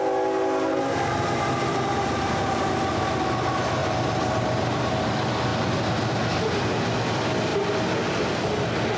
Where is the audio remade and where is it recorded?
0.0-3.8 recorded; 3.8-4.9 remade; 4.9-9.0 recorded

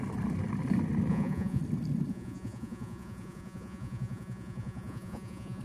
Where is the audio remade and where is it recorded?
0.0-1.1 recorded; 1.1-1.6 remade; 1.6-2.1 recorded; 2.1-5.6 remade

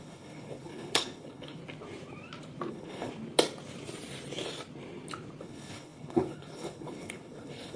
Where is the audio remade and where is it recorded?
0.0-1.6 remade; 1.6-2.7 recorded; 2.7-3.1 remade; 3.1-5.4 recorded; 5.4-7.8 remade

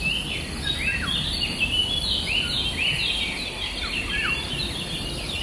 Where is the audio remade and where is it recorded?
0.0-5.4 recorded

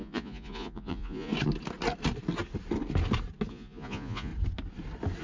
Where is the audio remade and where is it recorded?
0.0-1.3 remade; 1.3-3.5 recorded; 3.5-4.3 remade; 4.3-5.2 recorded